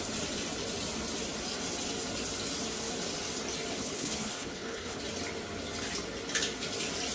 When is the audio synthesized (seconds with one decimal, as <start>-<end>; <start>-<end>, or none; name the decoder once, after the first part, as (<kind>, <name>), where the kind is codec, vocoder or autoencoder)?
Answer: 3.7-5.0 (codec, HILCodec)